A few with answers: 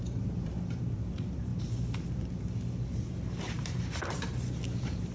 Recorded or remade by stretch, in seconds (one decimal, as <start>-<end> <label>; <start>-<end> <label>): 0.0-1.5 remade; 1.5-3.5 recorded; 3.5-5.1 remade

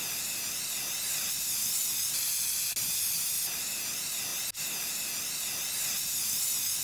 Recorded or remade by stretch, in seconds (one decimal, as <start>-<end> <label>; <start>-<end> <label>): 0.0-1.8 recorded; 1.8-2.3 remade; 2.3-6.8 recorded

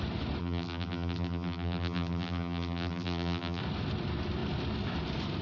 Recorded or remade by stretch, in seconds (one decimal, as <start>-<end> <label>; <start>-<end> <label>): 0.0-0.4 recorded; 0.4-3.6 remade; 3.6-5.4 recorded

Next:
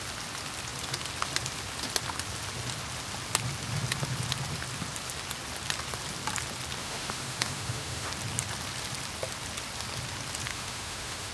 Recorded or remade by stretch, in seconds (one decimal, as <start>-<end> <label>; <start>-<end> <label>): 0.0-6.8 recorded; 6.8-8.1 remade; 8.1-10.5 recorded; 10.5-11.3 remade

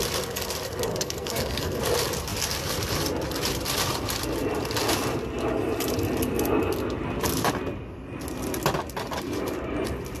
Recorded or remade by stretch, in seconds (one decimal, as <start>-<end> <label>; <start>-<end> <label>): 0.0-0.9 recorded; 0.9-1.8 remade; 1.8-10.2 recorded

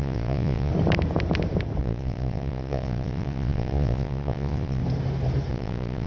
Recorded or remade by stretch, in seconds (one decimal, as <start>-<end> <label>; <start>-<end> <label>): 0.0-0.7 remade; 0.7-1.8 recorded; 1.8-4.8 remade; 4.8-5.5 recorded; 5.5-6.1 remade

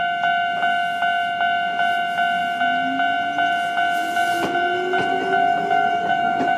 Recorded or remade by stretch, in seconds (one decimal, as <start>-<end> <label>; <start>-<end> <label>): 0.0-6.6 recorded